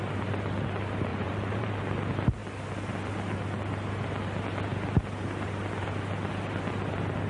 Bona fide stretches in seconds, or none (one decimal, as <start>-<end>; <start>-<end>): 0.0-1.1; 1.7-7.3